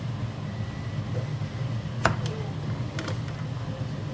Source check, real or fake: real